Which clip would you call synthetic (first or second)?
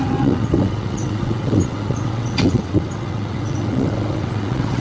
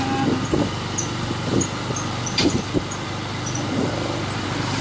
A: first